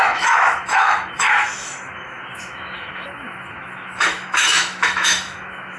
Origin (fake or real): fake